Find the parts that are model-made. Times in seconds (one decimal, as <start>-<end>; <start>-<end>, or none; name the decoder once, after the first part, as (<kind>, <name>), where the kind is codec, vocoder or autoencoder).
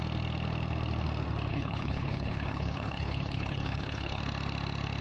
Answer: 1.5-4.2 (codec, HILCodec)